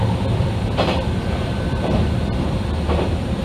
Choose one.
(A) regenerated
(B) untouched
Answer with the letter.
A